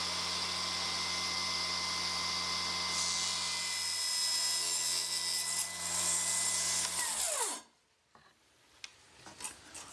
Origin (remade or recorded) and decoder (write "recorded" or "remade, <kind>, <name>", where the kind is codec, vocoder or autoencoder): recorded